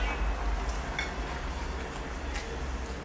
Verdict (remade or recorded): recorded